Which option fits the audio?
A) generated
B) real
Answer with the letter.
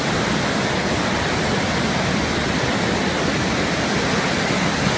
B